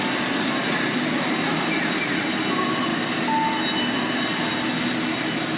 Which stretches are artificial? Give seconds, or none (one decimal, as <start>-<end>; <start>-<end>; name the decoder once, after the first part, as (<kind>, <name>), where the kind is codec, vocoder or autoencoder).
none

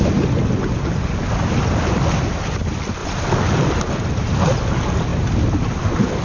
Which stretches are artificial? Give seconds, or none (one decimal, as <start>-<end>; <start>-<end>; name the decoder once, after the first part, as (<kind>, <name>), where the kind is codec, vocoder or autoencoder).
none

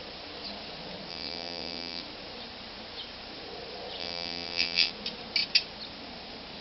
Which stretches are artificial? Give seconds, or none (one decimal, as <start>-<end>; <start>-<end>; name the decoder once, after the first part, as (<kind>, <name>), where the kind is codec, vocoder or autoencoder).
1.1-2.0 (vocoder, WaveNeXt); 4.0-4.9

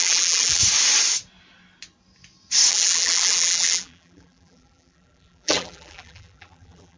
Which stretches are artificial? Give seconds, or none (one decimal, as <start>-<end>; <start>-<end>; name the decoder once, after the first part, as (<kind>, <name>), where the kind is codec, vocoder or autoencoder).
0.0-0.6 (vocoder, BigVGAN v2); 2.7-7.0

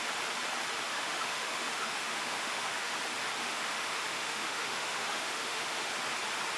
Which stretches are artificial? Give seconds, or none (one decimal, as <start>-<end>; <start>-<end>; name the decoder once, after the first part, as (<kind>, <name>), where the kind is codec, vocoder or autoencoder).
0.9-3.0 (autoencoder, DAC-VAE); 3.4-5.9

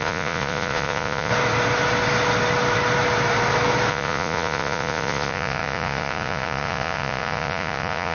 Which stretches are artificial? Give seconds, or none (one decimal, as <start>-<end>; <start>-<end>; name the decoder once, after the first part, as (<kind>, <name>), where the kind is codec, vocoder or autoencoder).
0.0-1.3 (vocoder, Vocos); 3.9-8.1